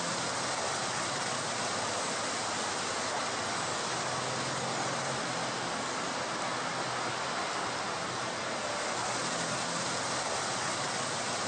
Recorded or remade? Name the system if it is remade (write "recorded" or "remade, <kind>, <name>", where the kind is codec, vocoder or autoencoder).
recorded